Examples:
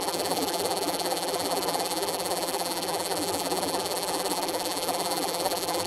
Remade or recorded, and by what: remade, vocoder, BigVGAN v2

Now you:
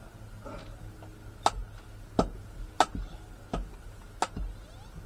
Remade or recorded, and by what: recorded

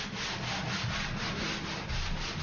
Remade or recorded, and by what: recorded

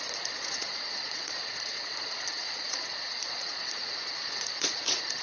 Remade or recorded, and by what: remade, vocoder, Vocos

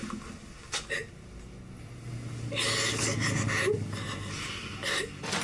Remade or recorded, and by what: recorded